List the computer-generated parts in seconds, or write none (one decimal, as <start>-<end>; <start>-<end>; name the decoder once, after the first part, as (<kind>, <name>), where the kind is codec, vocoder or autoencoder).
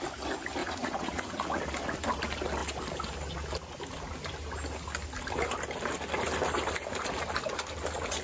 0.6-1.6 (vocoder, Vocos)